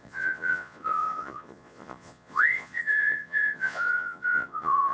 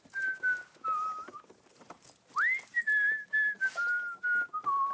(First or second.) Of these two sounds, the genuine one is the second